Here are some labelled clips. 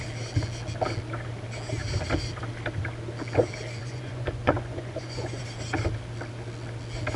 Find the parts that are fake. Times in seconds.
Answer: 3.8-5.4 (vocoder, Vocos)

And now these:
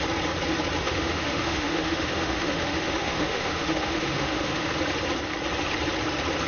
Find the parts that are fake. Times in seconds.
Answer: 0.8-4.7 (autoencoder, DAC-VAE)

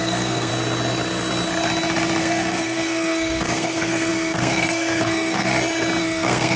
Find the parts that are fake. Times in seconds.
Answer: 0.0-0.5 (codec, SNAC); 2.2-5.5; 6.0-6.6

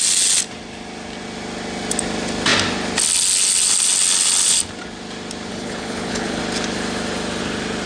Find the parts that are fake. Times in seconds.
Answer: 5.5-6.4 (codec, HILCodec)

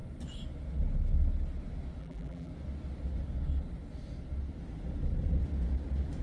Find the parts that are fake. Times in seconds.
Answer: 2.0-2.5 (vocoder, BigVGAN v2)

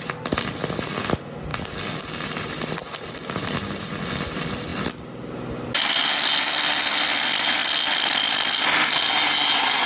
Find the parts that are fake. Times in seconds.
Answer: none

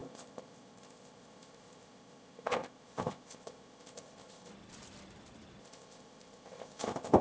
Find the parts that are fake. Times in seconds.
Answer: 0.0-4.5 (codec, ZipCodec); 5.6-7.2

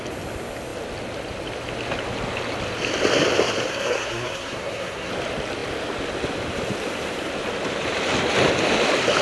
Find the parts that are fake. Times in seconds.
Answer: 3.7-5.1 (codec, SNAC)